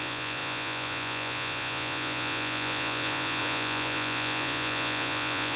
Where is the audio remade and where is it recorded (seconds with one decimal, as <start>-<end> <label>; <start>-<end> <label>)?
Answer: 0.0-5.6 remade